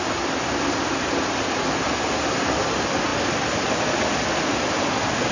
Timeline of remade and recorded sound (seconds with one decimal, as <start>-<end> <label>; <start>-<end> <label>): 0.0-5.3 recorded